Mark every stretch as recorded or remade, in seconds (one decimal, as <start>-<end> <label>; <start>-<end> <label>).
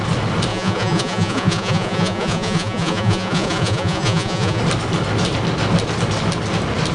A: 0.0-0.5 recorded; 0.5-4.6 remade; 4.6-6.9 recorded